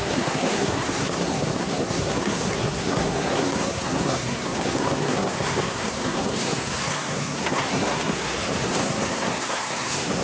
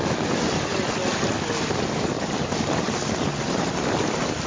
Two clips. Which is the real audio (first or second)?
second